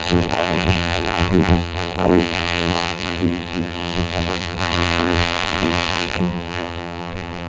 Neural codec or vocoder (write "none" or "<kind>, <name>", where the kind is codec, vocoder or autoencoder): vocoder, BigVGAN v2